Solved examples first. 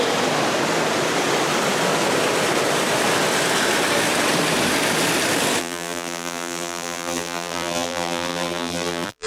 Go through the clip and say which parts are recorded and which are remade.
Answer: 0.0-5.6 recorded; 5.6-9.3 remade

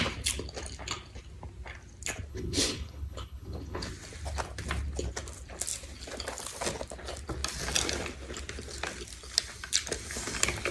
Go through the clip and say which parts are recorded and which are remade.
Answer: 0.0-2.3 recorded; 2.3-3.9 remade; 3.9-10.7 recorded

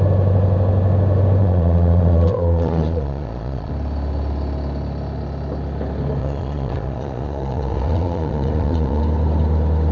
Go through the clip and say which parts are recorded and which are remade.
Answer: 0.0-1.4 recorded; 1.4-3.7 remade; 3.7-6.2 recorded; 6.2-9.0 remade; 9.0-9.9 recorded

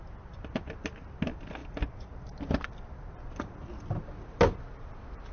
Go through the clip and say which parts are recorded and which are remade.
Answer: 0.0-5.3 recorded

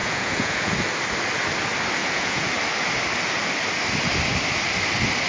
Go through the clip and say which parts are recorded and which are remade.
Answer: 0.0-0.7 remade; 0.7-2.0 recorded; 2.0-2.5 remade; 2.5-5.3 recorded

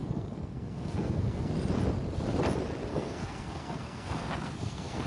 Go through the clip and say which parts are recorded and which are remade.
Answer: 0.0-1.5 remade; 1.5-2.9 recorded; 2.9-5.1 remade

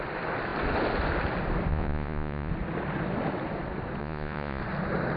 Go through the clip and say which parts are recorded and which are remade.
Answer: 0.0-1.7 recorded; 1.7-2.5 remade; 2.5-4.0 recorded; 4.0-4.6 remade; 4.6-5.2 recorded

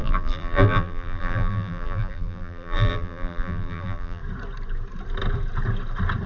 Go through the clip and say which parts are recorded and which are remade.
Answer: 0.0-4.2 remade; 4.2-6.3 recorded